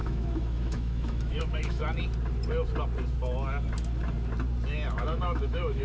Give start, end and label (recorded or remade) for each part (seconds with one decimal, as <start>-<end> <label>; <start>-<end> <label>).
0.0-1.8 remade; 1.8-5.0 recorded; 5.0-5.8 remade